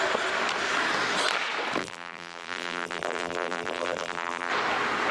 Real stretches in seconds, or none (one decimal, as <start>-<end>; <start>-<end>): 0.0-1.8; 4.5-5.1